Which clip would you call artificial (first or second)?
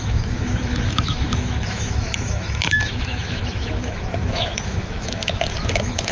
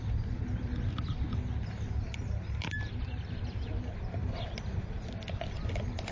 first